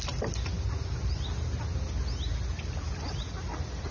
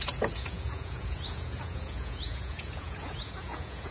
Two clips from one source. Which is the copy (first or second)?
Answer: second